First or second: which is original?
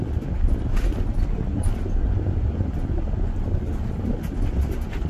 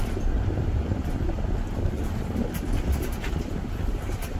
first